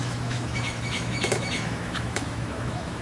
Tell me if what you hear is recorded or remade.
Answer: remade